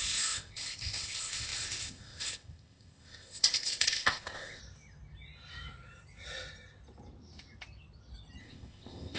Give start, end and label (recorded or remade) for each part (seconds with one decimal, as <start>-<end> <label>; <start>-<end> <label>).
0.0-4.6 remade; 4.6-8.4 recorded; 8.4-9.2 remade